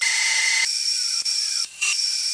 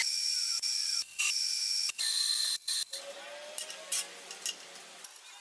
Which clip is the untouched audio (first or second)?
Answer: second